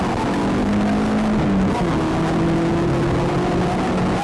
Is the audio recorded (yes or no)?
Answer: yes